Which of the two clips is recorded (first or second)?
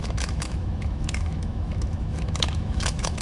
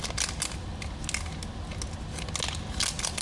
second